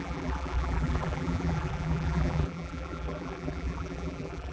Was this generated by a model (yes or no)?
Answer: yes